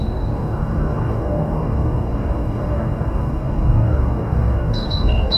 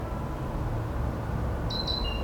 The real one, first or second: second